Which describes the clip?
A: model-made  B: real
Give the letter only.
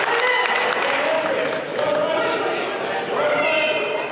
B